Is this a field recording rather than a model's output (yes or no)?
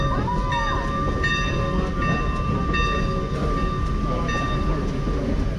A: yes